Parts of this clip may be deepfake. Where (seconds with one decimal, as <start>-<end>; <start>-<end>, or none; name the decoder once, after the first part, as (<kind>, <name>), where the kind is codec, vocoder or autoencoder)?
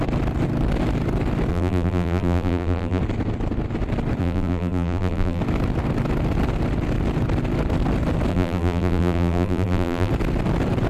1.5-3.0 (vocoder, BigVGAN v2); 4.2-5.4; 8.3-10.1